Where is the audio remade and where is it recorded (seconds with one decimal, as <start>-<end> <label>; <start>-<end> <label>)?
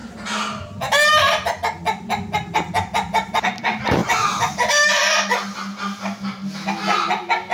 0.0-7.5 recorded